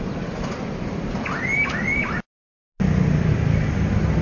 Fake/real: real